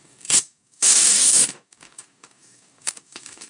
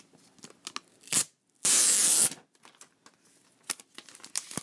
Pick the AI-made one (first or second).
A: first